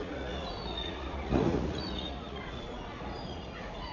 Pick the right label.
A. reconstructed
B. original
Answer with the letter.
A